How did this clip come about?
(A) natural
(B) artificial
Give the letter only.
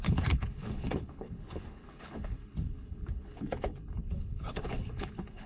B